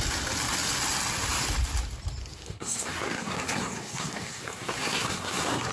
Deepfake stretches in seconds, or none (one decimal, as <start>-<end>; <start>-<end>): 2.2-5.7